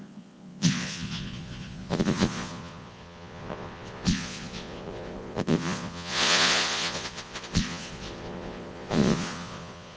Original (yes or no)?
no